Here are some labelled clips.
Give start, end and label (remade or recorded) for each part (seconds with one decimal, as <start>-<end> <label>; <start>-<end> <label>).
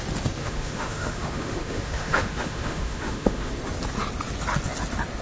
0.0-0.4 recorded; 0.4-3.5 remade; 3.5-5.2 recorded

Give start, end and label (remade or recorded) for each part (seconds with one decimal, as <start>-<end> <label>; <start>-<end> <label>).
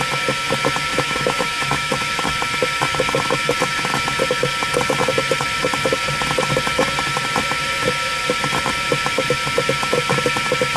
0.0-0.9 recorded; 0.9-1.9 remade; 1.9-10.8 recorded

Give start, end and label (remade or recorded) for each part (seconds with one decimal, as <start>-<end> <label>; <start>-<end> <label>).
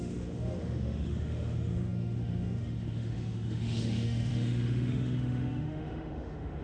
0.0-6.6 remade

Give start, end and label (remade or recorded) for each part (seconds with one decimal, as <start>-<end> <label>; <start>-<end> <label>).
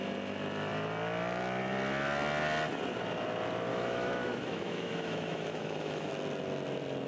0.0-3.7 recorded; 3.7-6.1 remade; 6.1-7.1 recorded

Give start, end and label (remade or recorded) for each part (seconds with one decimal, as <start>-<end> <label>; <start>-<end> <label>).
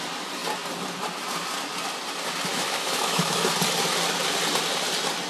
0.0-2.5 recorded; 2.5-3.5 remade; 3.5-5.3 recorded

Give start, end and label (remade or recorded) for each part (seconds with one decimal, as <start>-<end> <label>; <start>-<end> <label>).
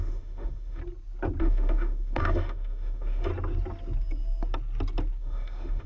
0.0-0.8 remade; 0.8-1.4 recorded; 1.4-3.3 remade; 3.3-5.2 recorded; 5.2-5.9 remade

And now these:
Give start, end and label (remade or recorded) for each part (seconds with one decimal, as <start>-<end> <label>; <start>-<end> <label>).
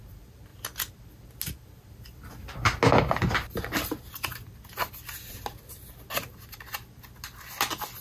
0.0-8.0 recorded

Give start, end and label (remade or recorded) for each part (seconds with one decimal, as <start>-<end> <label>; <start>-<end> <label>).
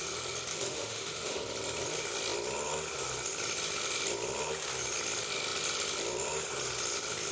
0.0-0.5 recorded; 0.5-1.4 remade; 1.4-7.3 recorded